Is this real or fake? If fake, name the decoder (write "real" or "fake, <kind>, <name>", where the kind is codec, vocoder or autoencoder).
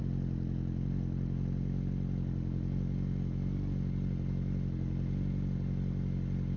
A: real